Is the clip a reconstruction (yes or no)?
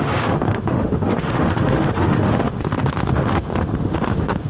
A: yes